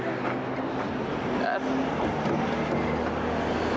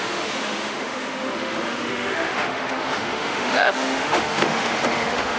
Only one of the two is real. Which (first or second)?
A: first